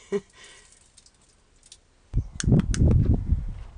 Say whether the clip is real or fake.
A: real